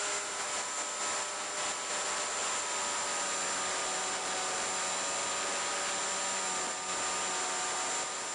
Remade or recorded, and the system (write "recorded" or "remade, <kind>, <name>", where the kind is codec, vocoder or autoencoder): recorded